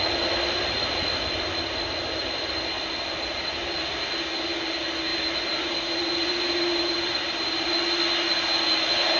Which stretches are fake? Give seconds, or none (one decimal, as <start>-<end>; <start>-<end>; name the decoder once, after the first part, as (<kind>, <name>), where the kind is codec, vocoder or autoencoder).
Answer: 5.1-7.7 (vocoder, BigVGAN v2)